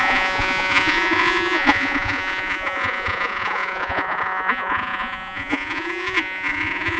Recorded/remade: remade